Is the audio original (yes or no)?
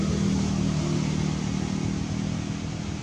yes